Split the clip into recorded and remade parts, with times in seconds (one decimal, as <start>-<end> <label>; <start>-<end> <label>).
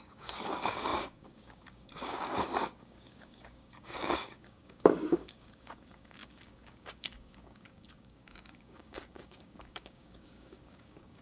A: 0.0-11.2 remade